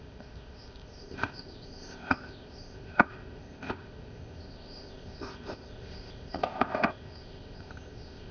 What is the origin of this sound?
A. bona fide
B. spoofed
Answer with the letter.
B